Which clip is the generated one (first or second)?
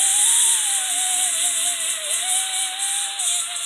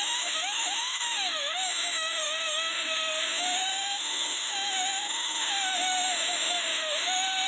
second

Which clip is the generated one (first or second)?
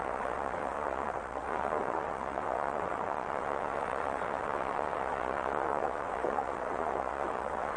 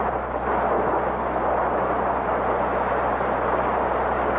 first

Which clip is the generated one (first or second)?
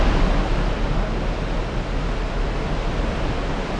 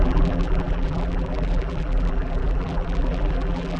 second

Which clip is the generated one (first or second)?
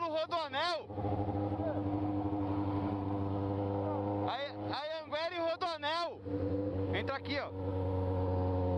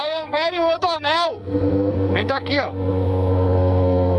second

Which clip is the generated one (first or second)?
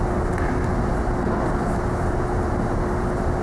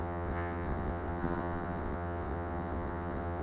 second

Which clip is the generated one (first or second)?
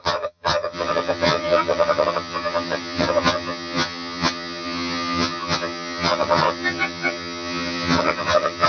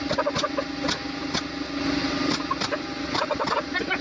first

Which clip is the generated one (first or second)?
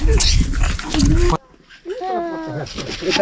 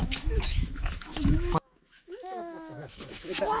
second